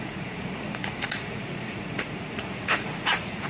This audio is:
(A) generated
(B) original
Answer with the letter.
A